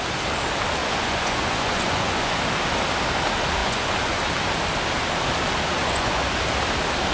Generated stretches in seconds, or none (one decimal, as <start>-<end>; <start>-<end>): 0.8-2.4; 3.6-4.2; 5.8-6.4